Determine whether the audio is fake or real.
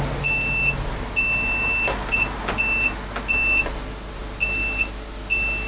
real